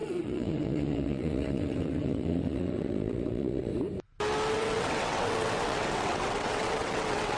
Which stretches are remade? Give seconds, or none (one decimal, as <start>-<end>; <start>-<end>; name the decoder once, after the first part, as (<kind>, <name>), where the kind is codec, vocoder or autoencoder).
0.0-3.7 (vocoder, WaveNeXt); 4.5-7.4